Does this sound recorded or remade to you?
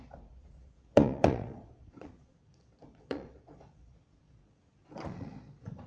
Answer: remade